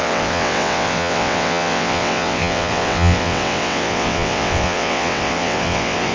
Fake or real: fake